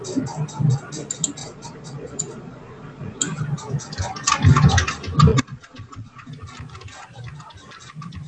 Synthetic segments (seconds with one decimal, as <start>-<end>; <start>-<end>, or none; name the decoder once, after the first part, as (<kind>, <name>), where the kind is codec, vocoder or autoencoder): 1.4-3.2 (vocoder, Vocos); 5.3-6.3